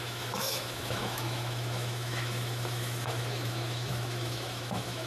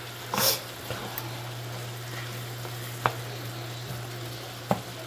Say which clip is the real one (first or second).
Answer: second